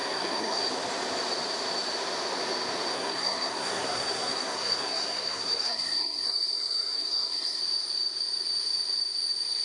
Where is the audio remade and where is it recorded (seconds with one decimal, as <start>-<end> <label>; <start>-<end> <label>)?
0.0-0.7 remade; 0.7-2.9 recorded; 2.9-7.6 remade; 7.6-9.6 recorded